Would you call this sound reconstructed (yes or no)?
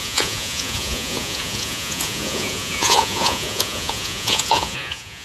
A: yes